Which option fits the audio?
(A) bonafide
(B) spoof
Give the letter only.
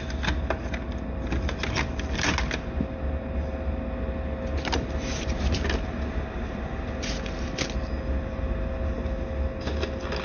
A